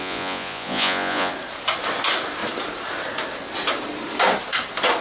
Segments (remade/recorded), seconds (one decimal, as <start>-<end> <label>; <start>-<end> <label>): 0.0-1.3 remade; 1.3-5.0 recorded